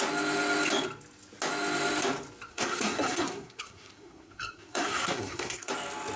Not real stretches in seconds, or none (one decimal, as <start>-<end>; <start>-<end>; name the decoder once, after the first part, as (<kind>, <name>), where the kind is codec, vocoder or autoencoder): 2.5-5.7 (codec, SNAC)